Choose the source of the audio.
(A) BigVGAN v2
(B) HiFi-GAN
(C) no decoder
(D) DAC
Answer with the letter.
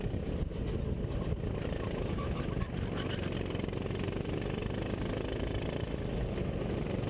C